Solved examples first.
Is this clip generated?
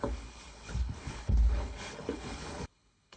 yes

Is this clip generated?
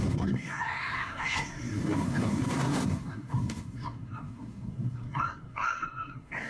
yes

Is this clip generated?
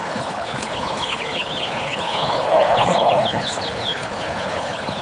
yes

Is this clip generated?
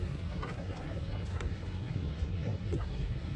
yes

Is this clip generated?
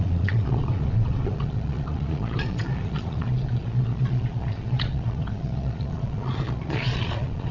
yes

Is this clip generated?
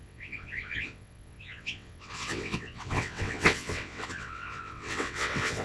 yes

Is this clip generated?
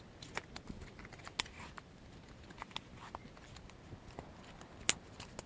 no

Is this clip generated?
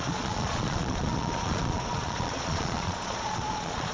yes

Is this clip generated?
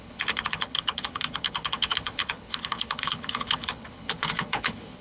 yes